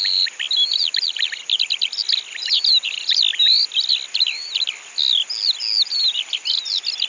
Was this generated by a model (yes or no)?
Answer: no